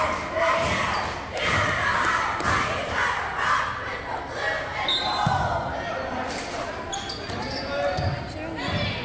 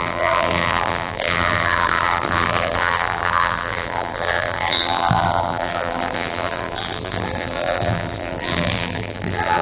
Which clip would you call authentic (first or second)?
first